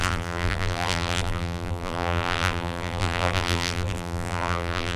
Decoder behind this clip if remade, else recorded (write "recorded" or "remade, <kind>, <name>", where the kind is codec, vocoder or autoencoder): remade, vocoder, BigVGAN v2